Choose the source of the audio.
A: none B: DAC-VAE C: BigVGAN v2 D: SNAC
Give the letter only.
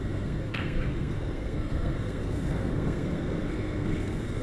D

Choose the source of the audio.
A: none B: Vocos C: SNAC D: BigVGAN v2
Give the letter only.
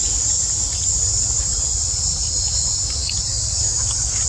A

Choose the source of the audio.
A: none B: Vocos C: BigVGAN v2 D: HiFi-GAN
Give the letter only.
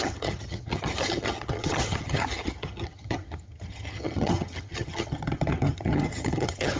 D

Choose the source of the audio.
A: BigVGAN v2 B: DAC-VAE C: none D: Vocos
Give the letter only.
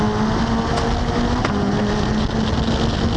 C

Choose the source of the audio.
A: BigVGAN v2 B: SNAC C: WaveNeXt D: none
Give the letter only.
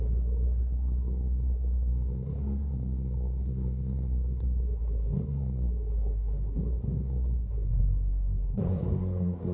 B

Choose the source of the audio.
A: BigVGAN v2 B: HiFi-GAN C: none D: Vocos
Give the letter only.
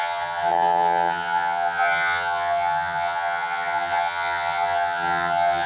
B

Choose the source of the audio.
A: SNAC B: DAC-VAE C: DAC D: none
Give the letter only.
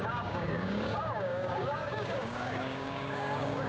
C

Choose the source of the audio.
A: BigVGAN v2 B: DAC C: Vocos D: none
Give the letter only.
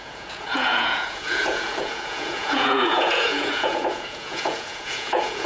C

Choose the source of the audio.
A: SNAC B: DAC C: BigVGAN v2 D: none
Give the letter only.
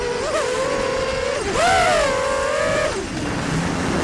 D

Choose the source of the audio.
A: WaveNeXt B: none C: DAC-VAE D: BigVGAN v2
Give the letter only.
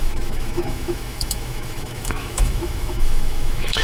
C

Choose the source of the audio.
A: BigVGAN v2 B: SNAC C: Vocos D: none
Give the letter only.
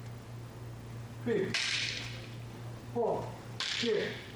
D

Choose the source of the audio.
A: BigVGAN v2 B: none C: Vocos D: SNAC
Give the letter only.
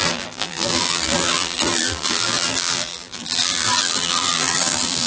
A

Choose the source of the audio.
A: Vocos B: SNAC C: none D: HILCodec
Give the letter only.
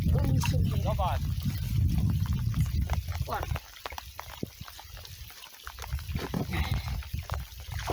C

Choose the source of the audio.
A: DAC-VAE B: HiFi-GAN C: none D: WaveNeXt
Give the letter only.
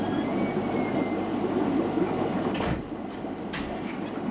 C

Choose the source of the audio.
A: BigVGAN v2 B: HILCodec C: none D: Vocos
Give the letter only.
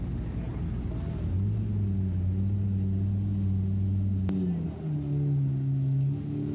C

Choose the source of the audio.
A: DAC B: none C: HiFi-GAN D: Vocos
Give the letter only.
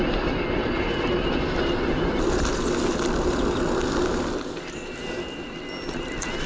B